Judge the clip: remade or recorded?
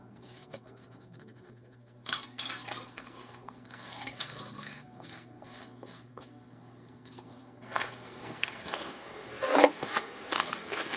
remade